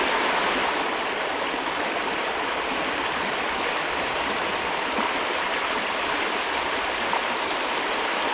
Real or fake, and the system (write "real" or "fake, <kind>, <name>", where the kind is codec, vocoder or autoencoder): real